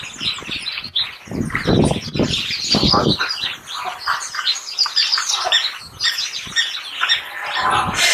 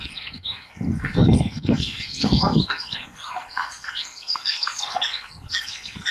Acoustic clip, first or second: first